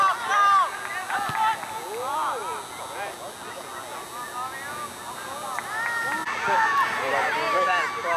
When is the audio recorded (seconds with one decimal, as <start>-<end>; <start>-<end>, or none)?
0.0-8.2